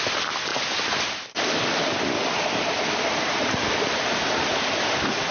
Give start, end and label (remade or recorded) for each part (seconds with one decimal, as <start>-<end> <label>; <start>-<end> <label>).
0.0-5.3 remade